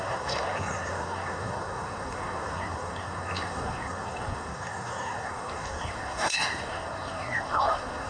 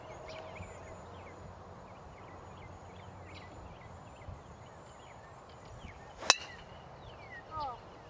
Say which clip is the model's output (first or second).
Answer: first